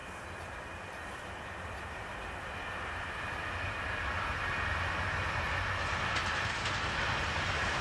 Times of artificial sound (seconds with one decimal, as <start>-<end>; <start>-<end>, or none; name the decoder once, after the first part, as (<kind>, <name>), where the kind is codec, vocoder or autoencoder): none